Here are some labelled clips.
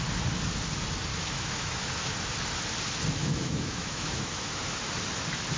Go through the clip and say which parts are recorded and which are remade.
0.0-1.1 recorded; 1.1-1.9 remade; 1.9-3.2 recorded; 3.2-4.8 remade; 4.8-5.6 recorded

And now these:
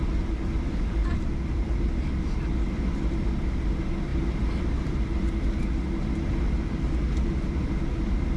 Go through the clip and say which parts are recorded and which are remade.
0.0-1.0 recorded; 1.0-2.5 remade; 2.5-8.4 recorded

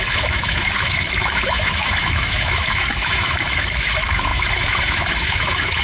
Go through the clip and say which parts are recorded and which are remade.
0.0-5.8 remade